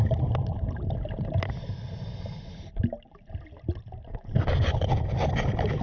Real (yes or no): yes